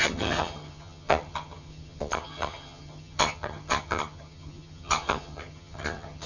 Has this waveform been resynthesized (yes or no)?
yes